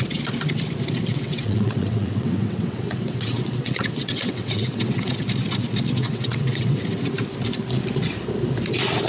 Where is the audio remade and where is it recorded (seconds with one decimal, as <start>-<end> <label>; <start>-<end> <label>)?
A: 0.0-1.1 recorded; 1.1-5.1 remade; 5.1-6.0 recorded; 6.0-6.8 remade; 6.8-9.1 recorded